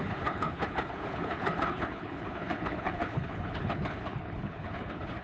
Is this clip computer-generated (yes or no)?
yes